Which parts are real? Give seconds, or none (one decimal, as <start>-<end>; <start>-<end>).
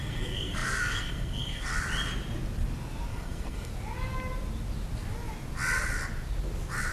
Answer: 1.7-3.1; 3.7-6.9